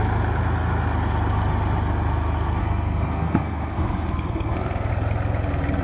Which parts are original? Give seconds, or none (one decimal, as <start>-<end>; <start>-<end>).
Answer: 0.0-2.6; 4.9-5.8